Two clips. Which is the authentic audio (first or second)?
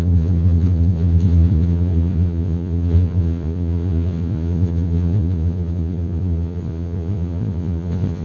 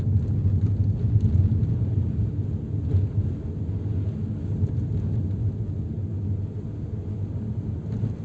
second